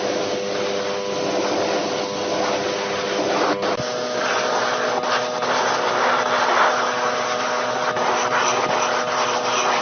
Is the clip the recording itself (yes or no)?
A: yes